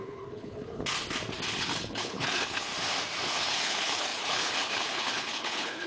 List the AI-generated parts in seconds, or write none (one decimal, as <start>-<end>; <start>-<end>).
0.0-0.9; 1.5-2.7; 3.3-5.9